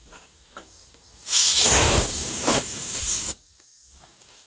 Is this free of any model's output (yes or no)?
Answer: no